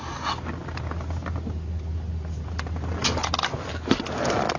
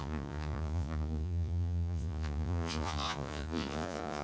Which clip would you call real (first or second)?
first